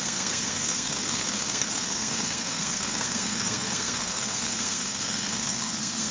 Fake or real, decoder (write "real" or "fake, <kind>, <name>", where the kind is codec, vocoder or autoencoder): fake, codec, SNAC